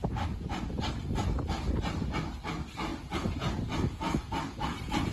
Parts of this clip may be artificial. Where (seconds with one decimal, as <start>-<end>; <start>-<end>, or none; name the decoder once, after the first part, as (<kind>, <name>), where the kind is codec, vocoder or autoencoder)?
none